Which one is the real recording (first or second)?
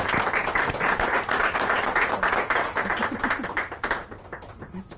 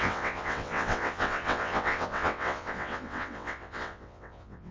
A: first